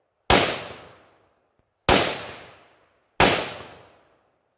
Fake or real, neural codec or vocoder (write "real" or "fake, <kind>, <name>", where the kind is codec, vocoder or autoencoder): real